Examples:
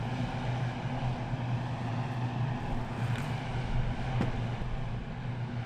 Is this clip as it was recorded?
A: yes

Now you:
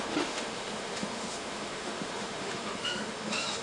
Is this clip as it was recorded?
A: no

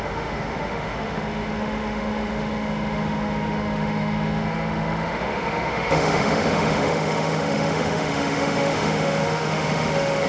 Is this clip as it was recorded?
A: no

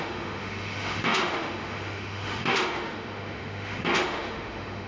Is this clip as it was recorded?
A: no